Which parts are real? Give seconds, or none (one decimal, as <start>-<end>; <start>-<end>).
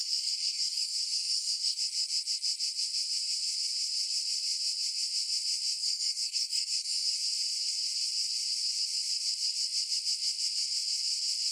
1.8-5.8; 7.1-11.5